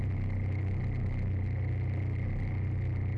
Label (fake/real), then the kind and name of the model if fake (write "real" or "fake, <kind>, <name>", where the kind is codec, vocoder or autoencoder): real